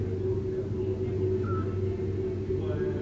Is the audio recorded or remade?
recorded